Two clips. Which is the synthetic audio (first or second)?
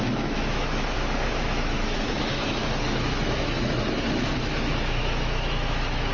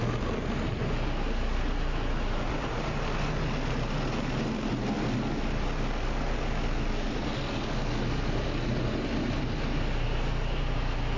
first